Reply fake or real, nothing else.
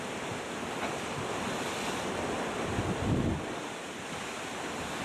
real